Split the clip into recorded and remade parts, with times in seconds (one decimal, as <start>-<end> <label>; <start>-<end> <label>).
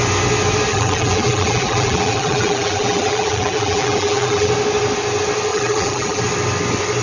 0.0-0.7 recorded; 0.7-4.5 remade; 4.5-5.5 recorded; 5.5-6.2 remade; 6.2-7.0 recorded